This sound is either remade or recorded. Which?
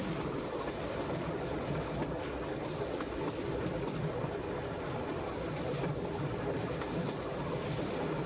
recorded